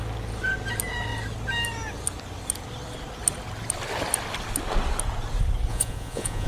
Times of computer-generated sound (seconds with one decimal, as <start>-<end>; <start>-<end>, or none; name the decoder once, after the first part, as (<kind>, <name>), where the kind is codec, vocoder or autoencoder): 5.7-6.5 (vocoder, Vocos)